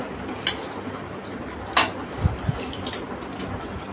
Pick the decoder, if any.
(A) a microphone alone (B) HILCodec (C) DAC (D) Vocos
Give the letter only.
A